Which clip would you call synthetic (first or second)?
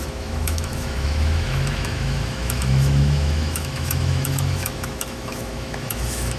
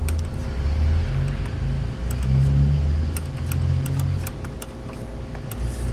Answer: first